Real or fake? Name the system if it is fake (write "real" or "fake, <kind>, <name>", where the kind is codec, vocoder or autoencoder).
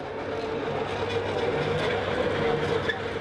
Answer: real